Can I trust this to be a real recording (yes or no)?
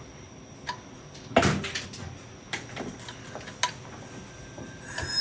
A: yes